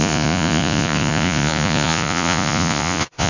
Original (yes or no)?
no